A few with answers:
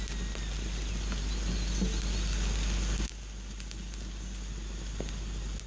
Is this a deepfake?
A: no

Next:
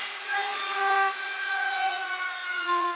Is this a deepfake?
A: yes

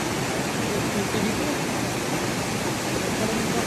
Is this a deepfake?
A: no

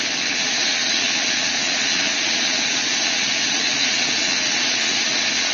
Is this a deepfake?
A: yes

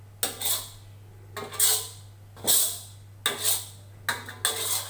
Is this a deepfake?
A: no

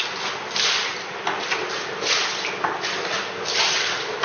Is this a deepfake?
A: no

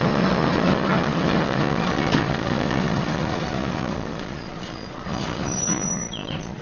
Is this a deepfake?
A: yes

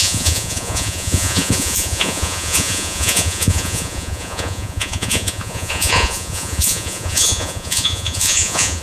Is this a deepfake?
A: yes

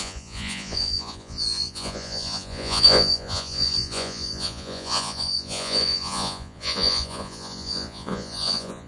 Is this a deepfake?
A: yes